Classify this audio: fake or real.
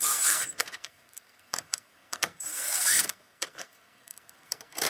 fake